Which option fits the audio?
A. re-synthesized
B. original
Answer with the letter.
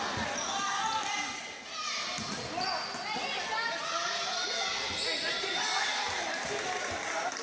B